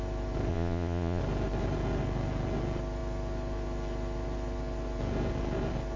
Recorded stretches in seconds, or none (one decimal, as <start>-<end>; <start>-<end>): 0.0-0.5; 1.2-6.0